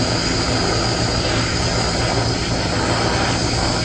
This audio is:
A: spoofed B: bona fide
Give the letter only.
B